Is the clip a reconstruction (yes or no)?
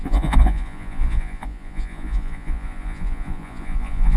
yes